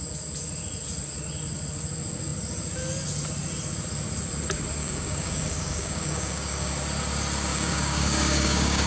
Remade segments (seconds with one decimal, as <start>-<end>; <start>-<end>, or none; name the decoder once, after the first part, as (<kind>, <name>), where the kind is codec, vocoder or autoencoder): 4.8-6.7 (codec, DAC); 7.5-8.9